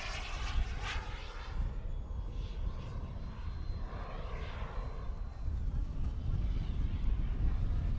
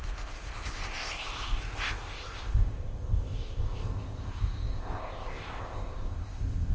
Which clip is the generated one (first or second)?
second